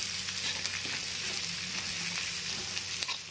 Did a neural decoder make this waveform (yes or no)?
no